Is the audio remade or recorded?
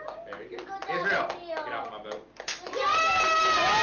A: recorded